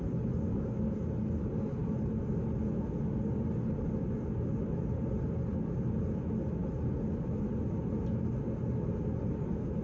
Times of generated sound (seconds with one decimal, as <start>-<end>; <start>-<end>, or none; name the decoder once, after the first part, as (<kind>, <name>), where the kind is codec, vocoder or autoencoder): none